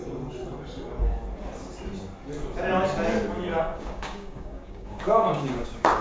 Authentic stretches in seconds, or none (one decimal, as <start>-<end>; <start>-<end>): 0.0-3.6